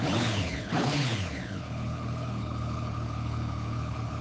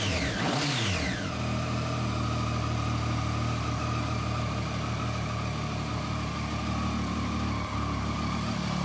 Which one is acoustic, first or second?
second